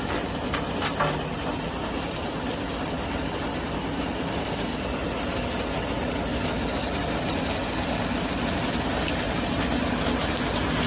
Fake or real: real